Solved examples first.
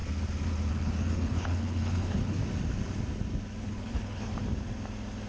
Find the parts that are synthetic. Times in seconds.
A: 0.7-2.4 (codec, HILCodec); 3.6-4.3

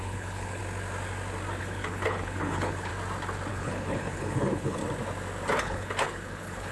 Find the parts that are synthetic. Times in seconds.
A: 0.0-0.6 (codec, HILCodec); 1.6-2.9; 3.5-4.8; 5.6-6.7

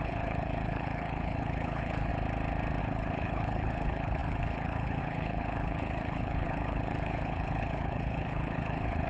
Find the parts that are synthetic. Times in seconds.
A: 0.0-2.1 (codec, HILCodec); 2.8-9.1

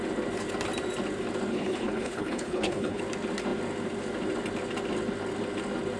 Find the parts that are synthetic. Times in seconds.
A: 1.5-3.0 (codec, HILCodec)